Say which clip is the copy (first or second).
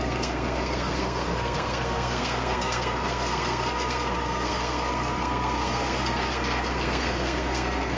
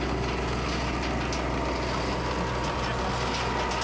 first